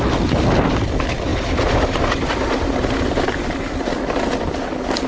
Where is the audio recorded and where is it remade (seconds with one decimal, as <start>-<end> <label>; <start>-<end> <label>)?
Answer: 0.0-1.3 recorded; 1.3-3.7 remade; 3.7-5.1 recorded